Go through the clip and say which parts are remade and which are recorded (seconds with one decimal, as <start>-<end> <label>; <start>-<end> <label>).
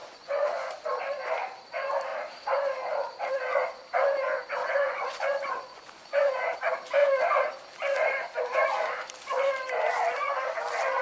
0.0-0.7 remade; 0.7-4.6 recorded; 4.6-6.4 remade; 6.4-11.0 recorded